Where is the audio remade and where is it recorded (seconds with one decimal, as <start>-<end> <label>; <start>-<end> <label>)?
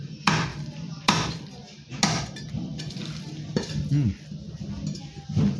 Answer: 0.0-0.5 recorded; 0.5-1.9 remade; 1.9-2.7 recorded; 2.7-3.3 remade; 3.3-5.6 recorded